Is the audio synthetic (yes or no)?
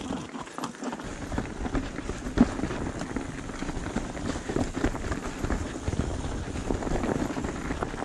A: no